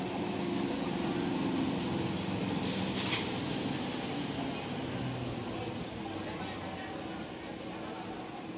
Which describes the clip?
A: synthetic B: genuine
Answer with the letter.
B